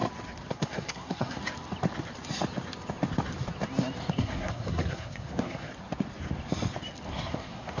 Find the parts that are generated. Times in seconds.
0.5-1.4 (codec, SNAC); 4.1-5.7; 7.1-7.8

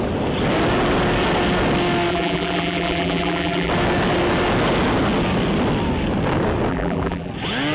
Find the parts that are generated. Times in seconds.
2.1-3.7 (vocoder, BigVGAN v2); 6.7-7.3